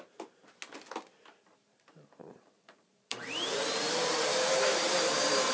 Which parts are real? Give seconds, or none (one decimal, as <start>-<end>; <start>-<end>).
0.0-2.2